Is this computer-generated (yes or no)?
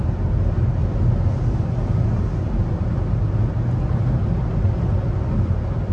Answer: no